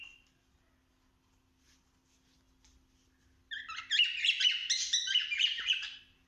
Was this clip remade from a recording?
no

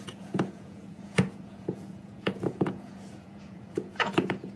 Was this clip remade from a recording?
yes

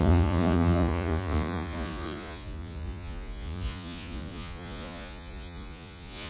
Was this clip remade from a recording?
yes